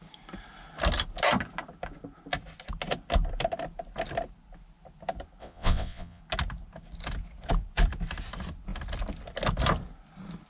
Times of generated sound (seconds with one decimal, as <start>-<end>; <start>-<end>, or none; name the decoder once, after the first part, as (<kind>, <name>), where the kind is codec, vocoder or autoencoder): 5.4-6.2 (vocoder, WaveNeXt)